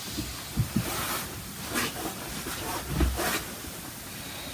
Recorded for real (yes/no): yes